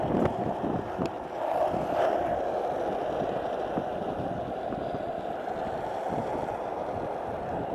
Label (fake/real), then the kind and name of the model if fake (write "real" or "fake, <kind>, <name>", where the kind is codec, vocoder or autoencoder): real